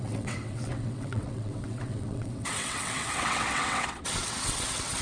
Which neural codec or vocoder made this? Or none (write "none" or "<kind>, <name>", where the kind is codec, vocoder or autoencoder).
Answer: vocoder, WaveNeXt